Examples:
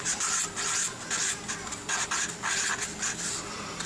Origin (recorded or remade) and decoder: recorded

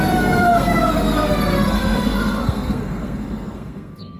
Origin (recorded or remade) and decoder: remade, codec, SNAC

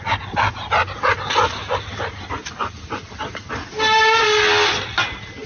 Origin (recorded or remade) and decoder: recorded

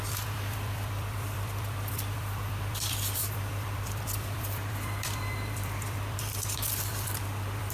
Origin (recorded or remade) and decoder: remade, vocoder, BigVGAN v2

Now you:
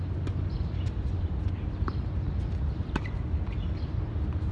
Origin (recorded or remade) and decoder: recorded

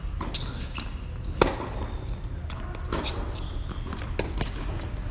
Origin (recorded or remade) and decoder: recorded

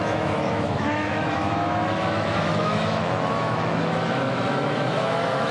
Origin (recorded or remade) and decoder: remade, autoencoder, DAC-VAE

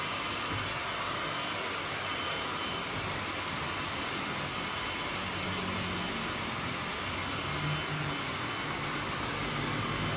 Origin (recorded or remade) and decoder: recorded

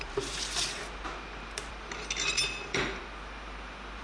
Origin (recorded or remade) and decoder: recorded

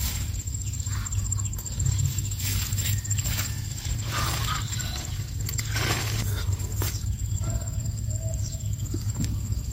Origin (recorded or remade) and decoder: remade, codec, DAC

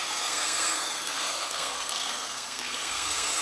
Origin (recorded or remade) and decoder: remade, codec, SNAC